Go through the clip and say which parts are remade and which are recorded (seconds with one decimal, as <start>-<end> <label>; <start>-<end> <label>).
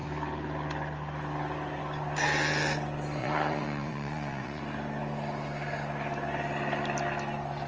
0.0-3.2 recorded; 3.2-4.6 remade; 4.6-7.7 recorded